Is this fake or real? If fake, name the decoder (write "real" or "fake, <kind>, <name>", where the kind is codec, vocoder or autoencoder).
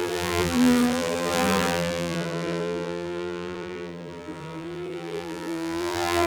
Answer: fake, vocoder, BigVGAN v2